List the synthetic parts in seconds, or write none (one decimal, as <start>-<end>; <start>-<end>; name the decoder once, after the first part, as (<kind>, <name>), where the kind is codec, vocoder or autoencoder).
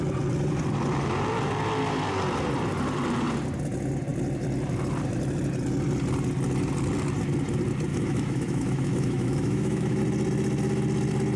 7.9-10.0 (autoencoder, DAC-VAE)